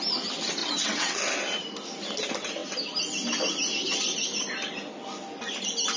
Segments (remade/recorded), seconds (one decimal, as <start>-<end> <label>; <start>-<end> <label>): 0.0-0.6 recorded; 0.6-1.2 remade; 1.2-6.0 recorded